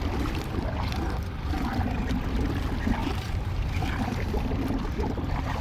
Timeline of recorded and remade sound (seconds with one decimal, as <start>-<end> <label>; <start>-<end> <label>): 0.0-3.0 recorded; 3.0-3.8 remade; 3.8-5.6 recorded